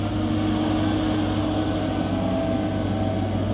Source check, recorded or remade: recorded